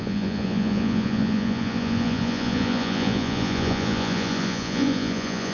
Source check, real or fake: fake